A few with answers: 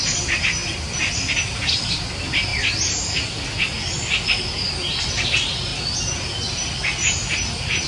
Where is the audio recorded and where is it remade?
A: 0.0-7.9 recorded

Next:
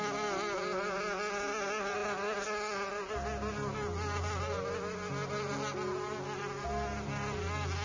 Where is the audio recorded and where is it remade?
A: 0.0-7.8 recorded

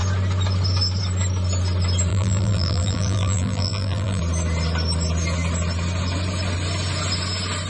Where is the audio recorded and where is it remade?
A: 0.0-2.1 recorded; 2.1-4.2 remade; 4.2-7.7 recorded

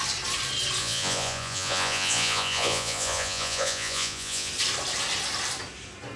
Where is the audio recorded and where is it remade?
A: 0.0-0.8 recorded; 0.8-4.5 remade; 4.5-6.2 recorded